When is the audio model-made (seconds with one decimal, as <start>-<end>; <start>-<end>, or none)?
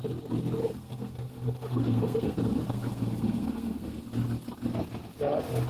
0.6-4.0